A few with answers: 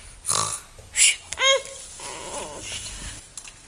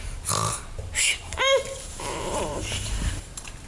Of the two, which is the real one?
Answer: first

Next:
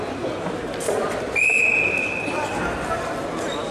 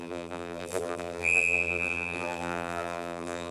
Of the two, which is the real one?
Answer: first